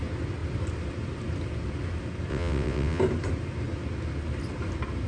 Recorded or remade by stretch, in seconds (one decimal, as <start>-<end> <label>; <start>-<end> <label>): 0.0-2.3 recorded; 2.3-3.0 remade; 3.0-5.1 recorded